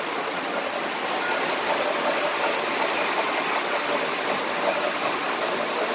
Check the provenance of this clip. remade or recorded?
recorded